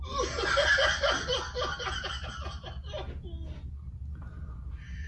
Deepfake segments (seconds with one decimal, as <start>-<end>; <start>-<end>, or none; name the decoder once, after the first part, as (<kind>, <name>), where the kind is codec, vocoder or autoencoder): none